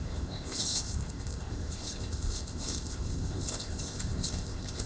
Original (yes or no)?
no